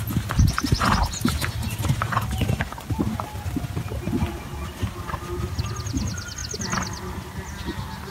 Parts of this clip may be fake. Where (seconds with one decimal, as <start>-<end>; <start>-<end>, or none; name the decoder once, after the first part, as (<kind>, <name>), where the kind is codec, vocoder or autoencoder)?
none